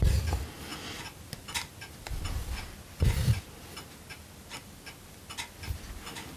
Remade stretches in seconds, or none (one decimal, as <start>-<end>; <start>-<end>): none